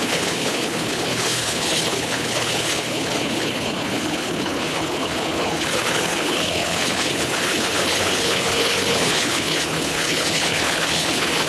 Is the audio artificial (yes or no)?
yes